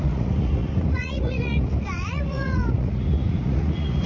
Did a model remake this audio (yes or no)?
yes